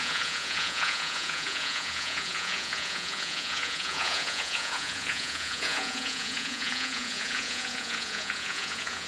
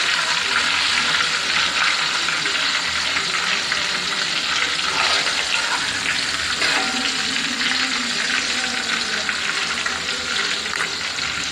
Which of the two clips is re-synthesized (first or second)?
first